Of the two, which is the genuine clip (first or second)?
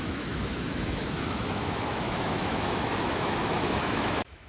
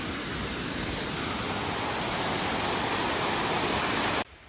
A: second